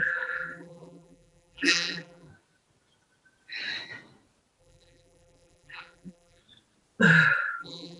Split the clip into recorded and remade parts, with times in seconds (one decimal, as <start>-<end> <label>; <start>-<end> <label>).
0.0-2.3 remade; 2.3-4.6 recorded; 4.6-6.4 remade; 6.4-7.6 recorded; 7.6-8.0 remade